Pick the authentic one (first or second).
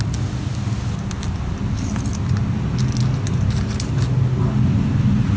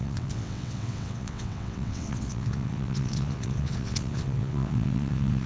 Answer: first